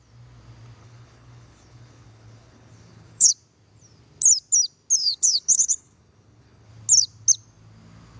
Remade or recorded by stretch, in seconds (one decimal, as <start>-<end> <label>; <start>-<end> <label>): 0.0-0.8 recorded; 0.8-3.3 remade; 3.3-5.0 recorded; 5.0-6.7 remade; 6.7-8.2 recorded